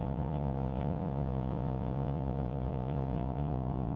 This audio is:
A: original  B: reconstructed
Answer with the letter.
B